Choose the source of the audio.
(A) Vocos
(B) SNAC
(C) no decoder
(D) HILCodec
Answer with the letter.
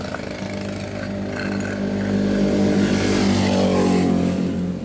C